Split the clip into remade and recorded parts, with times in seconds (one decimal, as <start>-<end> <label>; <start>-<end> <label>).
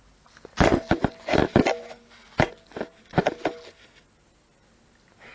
0.0-5.3 recorded